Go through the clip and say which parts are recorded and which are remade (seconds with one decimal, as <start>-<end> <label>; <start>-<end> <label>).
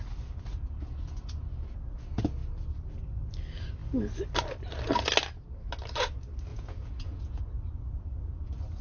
0.0-6.5 recorded; 6.5-7.4 remade; 7.4-8.8 recorded